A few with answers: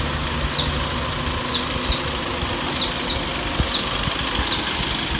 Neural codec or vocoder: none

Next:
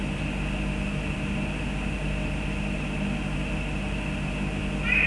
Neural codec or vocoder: none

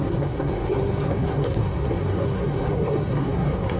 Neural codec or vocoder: codec, SNAC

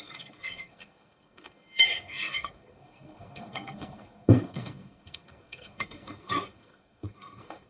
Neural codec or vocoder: codec, SNAC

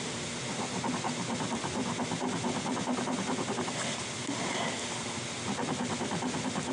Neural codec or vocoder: none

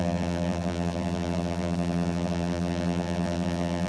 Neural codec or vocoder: vocoder, BigVGAN v2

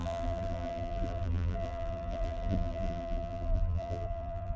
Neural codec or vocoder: vocoder, BigVGAN v2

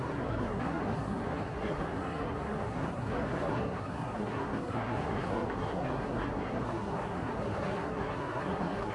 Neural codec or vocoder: codec, SNAC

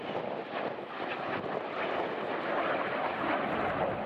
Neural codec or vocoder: none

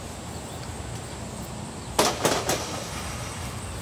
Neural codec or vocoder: none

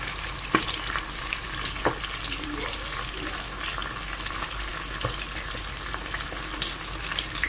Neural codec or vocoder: none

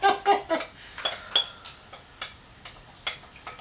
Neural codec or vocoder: none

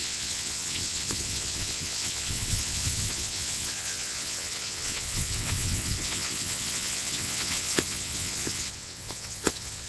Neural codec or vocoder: vocoder, WaveNeXt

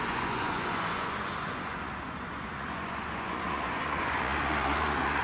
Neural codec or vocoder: vocoder, Vocos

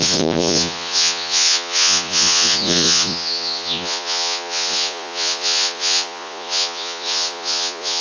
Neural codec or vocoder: vocoder, Vocos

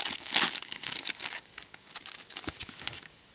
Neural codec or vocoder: codec, DAC